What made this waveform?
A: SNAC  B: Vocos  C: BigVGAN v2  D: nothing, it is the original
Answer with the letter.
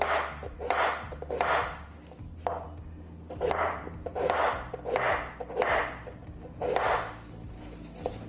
D